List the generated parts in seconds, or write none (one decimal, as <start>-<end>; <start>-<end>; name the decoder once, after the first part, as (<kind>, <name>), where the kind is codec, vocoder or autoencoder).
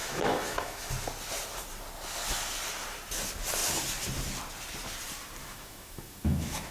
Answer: 0.0-0.9 (autoencoder, DAC-VAE); 5.4-6.7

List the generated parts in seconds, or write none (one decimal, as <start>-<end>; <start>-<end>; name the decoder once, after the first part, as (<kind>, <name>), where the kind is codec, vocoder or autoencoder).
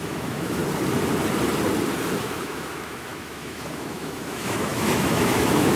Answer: 0.0-0.6 (autoencoder, DAC-VAE); 2.2-5.8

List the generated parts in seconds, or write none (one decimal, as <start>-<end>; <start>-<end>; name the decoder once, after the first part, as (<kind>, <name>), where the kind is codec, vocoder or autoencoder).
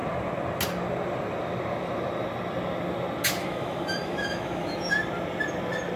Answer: 3.4-4.9 (autoencoder, DAC-VAE)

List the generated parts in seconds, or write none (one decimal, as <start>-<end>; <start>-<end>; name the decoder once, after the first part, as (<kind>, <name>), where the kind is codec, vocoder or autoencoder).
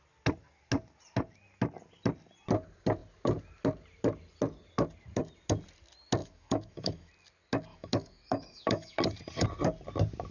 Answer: 6.2-7.1 (autoencoder, DAC-VAE); 7.7-9.0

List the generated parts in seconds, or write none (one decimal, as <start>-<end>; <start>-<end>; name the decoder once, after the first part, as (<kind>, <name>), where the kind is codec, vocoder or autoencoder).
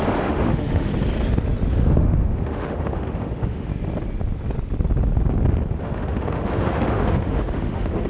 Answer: 0.0-0.9 (autoencoder, DAC-VAE); 1.7-3.7; 5.8-8.1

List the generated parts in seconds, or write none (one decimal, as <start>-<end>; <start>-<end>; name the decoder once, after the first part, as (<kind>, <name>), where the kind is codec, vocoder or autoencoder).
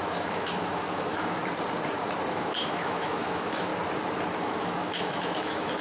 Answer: 0.0-1.4 (autoencoder, DAC-VAE); 2.3-3.7; 4.4-5.8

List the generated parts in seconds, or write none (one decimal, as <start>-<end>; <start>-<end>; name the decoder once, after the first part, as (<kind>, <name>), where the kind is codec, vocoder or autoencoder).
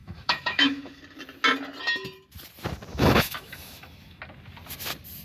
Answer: 0.0-1.0 (autoencoder, DAC-VAE); 2.9-4.2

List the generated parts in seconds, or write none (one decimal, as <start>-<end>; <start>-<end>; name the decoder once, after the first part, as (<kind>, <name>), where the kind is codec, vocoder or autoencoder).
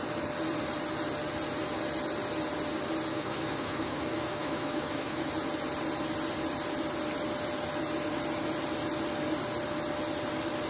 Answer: 3.1-5.3 (autoencoder, DAC-VAE)